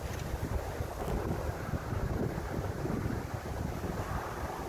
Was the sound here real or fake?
real